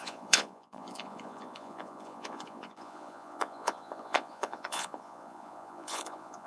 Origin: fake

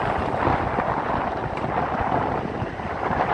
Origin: real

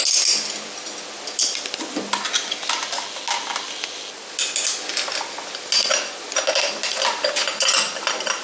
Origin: real